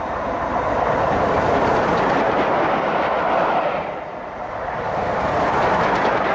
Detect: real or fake real